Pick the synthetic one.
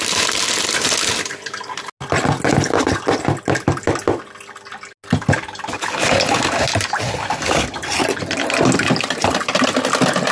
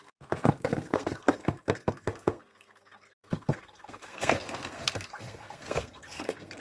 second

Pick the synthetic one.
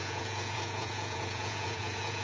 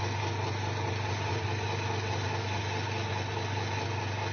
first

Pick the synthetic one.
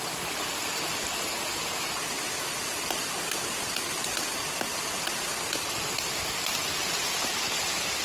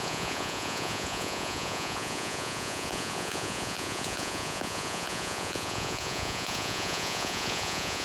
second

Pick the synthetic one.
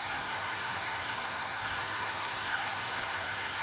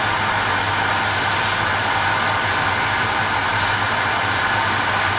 first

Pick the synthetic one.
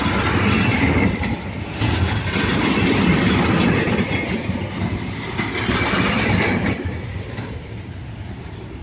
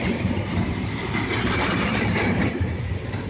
second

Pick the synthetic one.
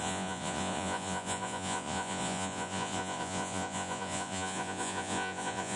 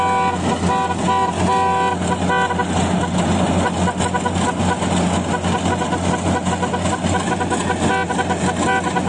first